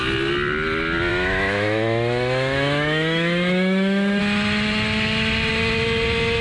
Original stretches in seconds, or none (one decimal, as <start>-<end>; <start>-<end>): 0.0-1.1; 4.2-6.4